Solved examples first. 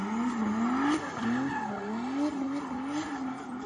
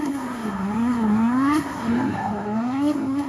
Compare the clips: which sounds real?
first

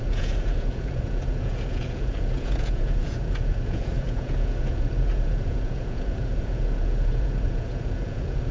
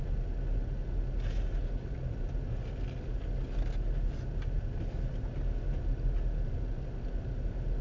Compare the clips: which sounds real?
second